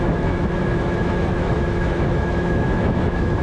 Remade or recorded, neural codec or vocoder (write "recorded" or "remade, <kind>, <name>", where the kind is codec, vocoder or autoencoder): remade, autoencoder, DAC-VAE